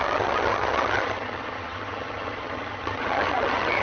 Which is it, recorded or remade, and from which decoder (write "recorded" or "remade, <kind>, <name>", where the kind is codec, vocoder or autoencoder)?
remade, vocoder, HiFi-GAN